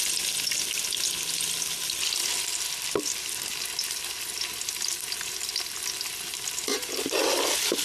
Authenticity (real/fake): real